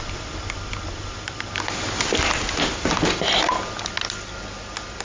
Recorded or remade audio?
recorded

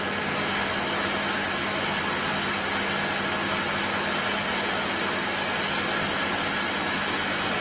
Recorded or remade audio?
recorded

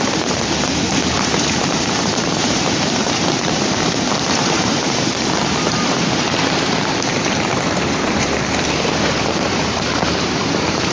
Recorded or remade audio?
remade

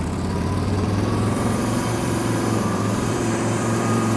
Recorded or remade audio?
remade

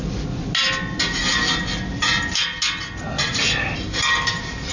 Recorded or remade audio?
recorded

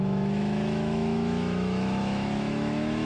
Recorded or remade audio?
remade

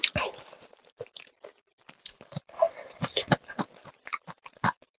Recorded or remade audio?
recorded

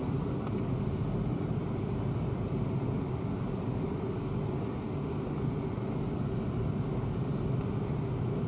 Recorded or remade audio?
recorded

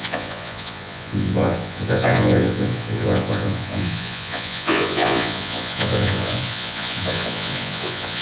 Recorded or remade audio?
remade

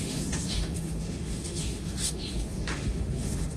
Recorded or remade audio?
remade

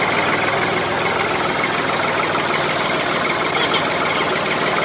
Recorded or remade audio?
recorded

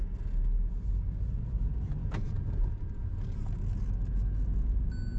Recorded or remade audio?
recorded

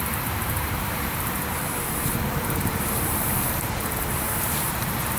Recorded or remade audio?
remade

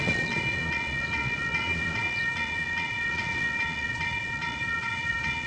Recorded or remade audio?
remade